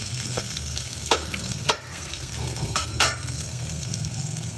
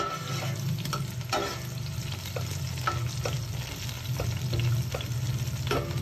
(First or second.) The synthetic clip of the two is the first